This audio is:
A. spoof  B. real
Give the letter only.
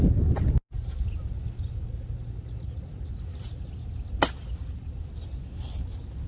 B